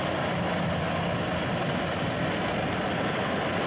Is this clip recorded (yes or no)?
yes